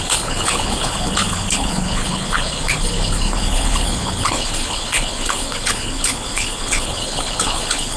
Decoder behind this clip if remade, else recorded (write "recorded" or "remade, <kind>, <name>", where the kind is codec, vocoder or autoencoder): remade, codec, HILCodec